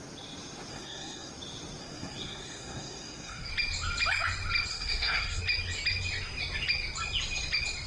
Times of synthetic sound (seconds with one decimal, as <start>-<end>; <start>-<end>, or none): 0.7-1.3; 1.8-3.5; 4.7-5.4